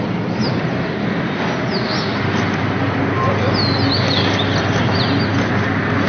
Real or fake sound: real